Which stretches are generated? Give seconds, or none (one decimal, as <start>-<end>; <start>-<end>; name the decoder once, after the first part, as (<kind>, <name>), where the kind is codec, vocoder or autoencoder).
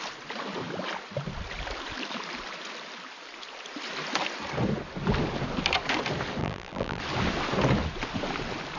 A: 6.4-7.0 (vocoder, BigVGAN v2)